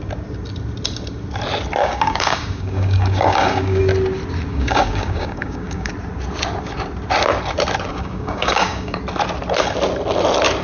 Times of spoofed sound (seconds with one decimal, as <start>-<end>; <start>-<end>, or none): 1.8-3.8; 4.5-5.9; 7.9-9.0